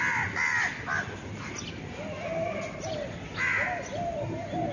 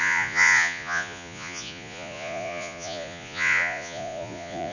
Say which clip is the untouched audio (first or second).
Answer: first